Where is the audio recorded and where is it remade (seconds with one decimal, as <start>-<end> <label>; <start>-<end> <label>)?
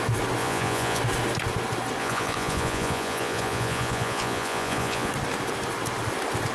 0.0-0.4 recorded; 0.4-1.0 remade; 1.0-2.0 recorded; 2.0-5.1 remade; 5.1-6.5 recorded